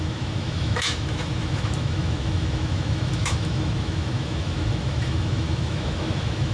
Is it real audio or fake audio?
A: fake